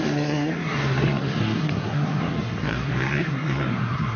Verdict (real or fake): fake